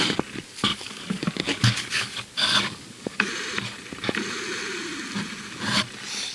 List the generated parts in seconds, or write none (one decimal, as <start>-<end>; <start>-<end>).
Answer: 0.7-3.3